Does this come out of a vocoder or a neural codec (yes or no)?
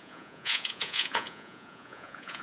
yes